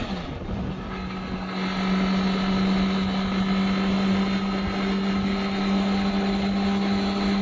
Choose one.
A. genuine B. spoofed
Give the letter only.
A